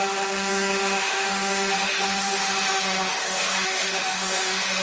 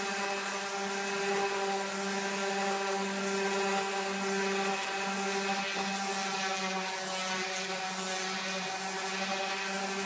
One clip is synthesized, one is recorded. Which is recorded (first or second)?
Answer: second